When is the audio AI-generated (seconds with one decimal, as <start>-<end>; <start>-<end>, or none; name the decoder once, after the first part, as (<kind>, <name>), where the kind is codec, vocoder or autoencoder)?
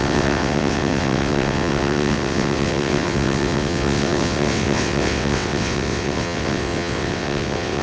0.0-7.8 (vocoder, WaveNeXt)